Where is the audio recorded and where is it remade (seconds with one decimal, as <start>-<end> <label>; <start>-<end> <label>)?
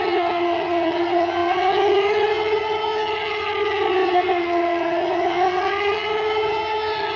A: 0.0-7.2 remade